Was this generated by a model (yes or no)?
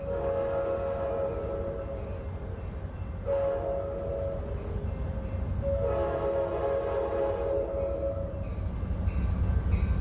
no